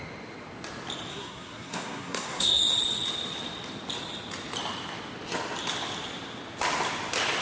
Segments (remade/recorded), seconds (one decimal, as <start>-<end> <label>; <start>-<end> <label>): 0.0-1.1 recorded; 1.1-2.6 remade; 2.6-7.4 recorded